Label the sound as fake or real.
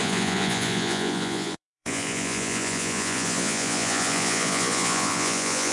fake